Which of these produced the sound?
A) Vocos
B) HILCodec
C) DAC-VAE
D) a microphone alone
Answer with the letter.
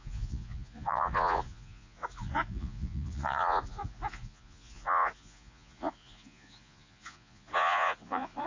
A